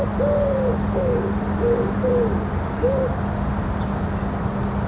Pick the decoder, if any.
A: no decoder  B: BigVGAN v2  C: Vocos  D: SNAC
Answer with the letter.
A